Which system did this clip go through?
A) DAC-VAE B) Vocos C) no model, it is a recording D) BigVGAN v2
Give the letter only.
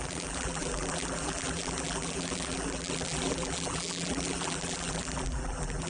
D